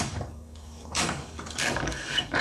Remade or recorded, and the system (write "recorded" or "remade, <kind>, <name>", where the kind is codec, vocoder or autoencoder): remade, codec, DAC